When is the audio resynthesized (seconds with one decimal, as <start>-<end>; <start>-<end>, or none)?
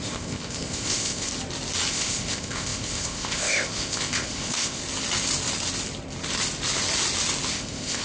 0.0-1.3; 1.9-4.8; 7.5-8.0